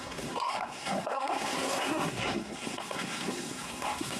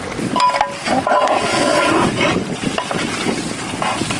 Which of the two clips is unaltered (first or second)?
second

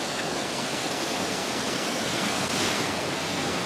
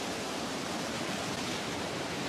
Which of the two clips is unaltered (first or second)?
second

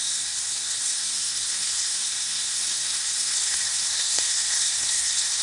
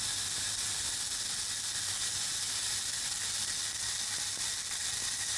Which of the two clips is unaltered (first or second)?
second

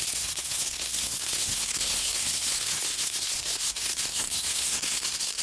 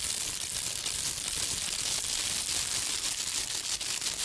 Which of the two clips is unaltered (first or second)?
second